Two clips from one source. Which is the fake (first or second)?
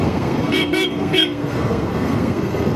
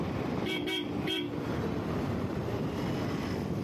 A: first